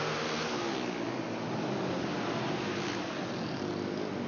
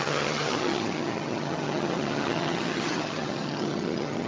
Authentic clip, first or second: first